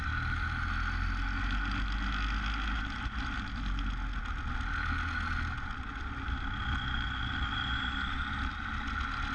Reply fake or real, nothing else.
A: real